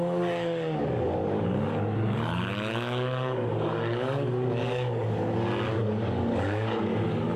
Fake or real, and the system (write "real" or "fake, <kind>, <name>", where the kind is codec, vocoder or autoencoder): fake, codec, DAC